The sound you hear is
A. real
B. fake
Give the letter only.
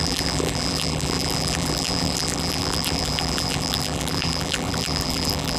B